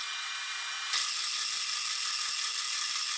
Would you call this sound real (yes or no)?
yes